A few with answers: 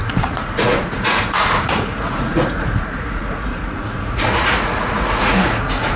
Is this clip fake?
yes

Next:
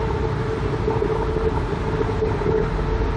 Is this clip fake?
no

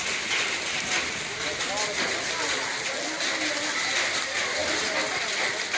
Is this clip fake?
no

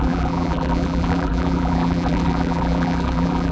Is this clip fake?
yes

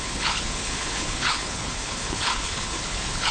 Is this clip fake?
yes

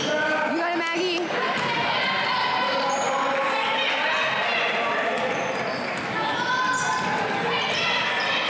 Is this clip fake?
no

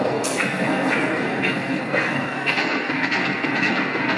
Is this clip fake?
yes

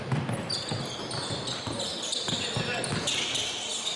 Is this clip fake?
no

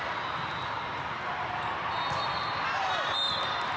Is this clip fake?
no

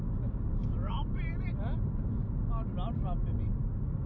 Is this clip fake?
no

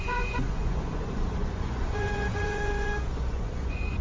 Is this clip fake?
yes